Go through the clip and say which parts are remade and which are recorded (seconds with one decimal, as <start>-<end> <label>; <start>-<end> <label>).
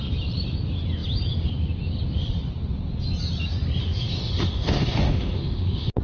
0.0-3.8 recorded; 3.8-6.0 remade